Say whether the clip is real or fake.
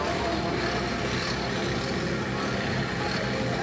real